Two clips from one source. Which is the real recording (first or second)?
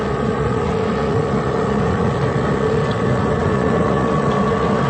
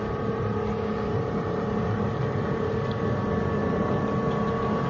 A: second